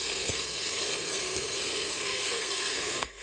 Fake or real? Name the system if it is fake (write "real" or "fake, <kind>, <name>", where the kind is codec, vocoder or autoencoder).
fake, codec, SNAC